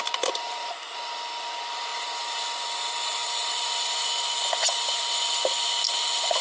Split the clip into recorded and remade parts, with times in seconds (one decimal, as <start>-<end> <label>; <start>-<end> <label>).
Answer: 0.0-1.9 recorded; 1.9-2.7 remade; 2.7-3.2 recorded; 3.2-4.2 remade; 4.2-6.4 recorded